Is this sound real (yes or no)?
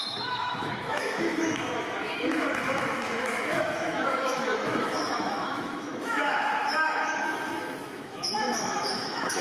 no